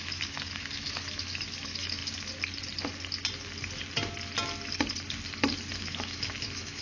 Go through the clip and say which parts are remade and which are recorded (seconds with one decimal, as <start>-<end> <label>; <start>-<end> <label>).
0.0-2.0 remade; 2.0-5.8 recorded; 5.8-6.8 remade